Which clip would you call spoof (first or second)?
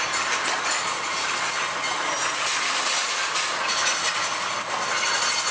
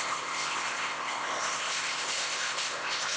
second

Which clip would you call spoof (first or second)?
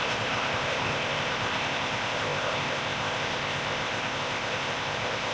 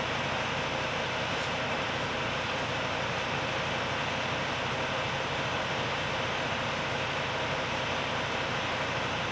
first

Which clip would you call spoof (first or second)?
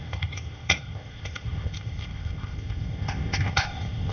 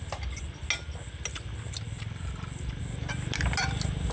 first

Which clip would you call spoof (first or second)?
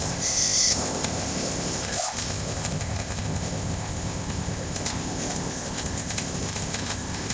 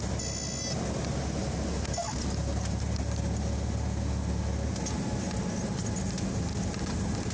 first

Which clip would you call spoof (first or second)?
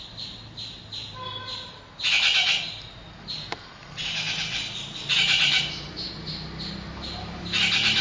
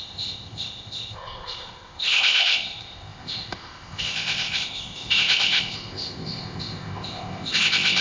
second